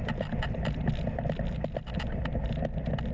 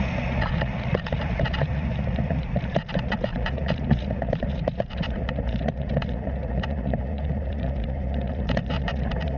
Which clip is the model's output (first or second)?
second